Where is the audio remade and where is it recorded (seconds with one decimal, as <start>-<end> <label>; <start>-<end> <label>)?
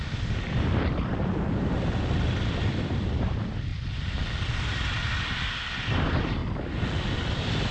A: 0.0-6.4 remade; 6.4-7.7 recorded